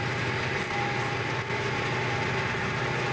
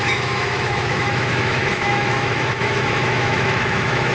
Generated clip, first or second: second